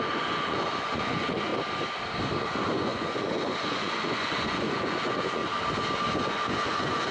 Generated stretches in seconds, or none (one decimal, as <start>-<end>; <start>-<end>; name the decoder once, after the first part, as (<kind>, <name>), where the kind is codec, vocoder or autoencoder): 0.0-1.5 (vocoder, Vocos); 2.4-5.4; 6.1-7.1